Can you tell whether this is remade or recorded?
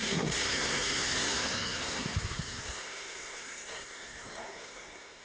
remade